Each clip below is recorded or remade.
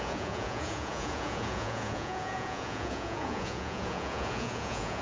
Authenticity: remade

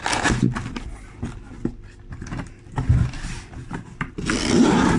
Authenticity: recorded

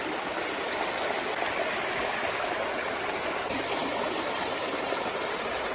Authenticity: recorded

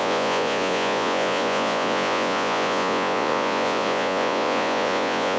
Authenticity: remade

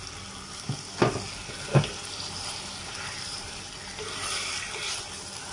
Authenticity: recorded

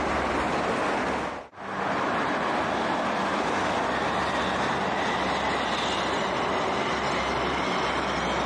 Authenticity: recorded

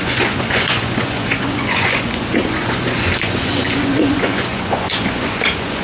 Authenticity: remade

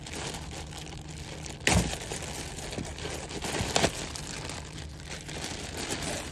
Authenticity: recorded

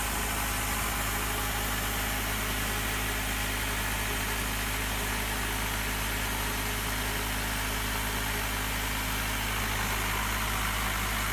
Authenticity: recorded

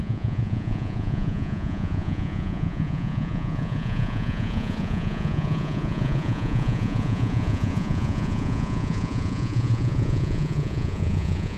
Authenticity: remade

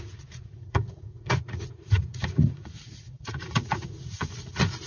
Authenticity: remade